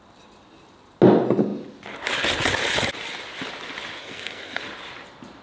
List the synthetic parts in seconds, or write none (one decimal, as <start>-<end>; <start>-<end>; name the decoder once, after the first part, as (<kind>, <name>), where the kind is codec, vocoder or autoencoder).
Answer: 4.0-4.6 (codec, SNAC)